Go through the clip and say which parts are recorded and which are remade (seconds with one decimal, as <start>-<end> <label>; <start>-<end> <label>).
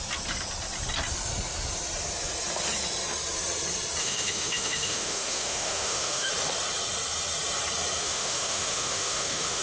0.0-4.0 recorded; 4.0-6.3 remade; 6.3-8.0 recorded; 8.0-9.6 remade